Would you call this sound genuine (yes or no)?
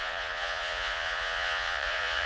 no